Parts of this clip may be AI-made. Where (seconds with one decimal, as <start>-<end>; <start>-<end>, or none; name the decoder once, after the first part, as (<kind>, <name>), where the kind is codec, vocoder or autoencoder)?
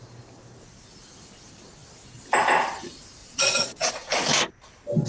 3.2-3.9 (vocoder, Vocos)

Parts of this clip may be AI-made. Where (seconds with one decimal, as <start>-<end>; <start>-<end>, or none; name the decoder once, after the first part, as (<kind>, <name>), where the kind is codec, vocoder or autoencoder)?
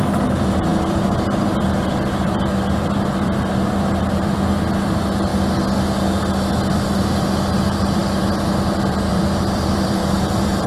0.0-5.3 (vocoder, BigVGAN v2); 7.0-10.7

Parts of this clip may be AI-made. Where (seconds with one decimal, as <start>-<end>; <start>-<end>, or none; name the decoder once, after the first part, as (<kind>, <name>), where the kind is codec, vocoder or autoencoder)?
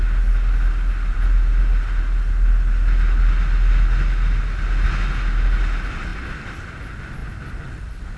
none